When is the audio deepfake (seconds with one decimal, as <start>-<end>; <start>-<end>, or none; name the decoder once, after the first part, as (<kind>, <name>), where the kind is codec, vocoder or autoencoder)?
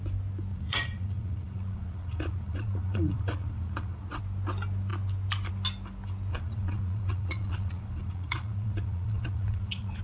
0.5-4.2 (vocoder, Vocos); 6.3-10.0